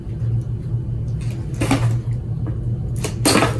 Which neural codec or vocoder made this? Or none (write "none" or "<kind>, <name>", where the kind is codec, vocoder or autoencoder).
none